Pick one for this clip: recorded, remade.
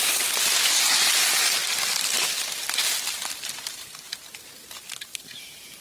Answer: recorded